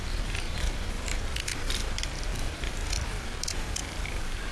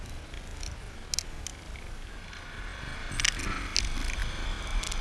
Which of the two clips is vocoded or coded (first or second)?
first